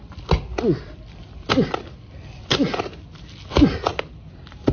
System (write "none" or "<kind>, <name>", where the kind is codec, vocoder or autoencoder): none